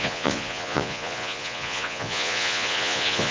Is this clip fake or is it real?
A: fake